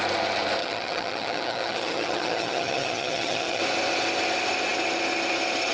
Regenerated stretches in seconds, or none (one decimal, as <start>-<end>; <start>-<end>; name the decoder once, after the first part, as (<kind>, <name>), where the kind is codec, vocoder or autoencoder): 0.6-3.6 (vocoder, HiFi-GAN)